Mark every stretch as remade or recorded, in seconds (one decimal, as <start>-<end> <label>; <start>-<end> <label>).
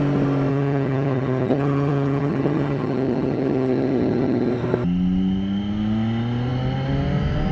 0.0-0.5 recorded; 0.5-4.5 remade; 4.5-7.5 recorded